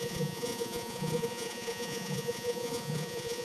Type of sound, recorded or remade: remade